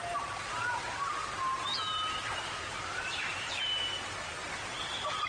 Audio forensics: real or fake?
real